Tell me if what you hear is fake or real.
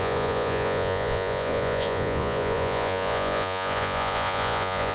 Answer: fake